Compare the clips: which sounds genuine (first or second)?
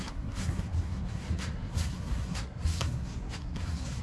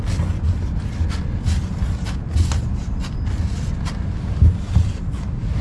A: second